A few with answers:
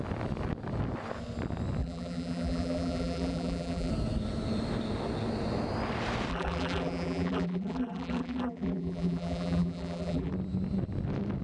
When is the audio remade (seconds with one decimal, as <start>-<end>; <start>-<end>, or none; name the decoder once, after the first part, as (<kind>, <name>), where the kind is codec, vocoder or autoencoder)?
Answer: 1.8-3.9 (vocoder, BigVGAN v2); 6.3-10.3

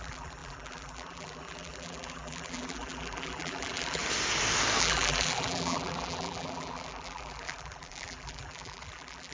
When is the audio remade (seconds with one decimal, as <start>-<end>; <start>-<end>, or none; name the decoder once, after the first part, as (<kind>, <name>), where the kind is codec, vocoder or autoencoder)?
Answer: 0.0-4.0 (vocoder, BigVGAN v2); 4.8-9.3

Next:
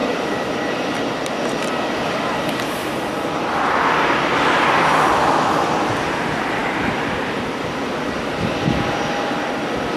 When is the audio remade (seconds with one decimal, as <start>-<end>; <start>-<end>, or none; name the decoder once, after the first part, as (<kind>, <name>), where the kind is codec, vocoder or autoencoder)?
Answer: 0.0-1.4 (vocoder, BigVGAN v2)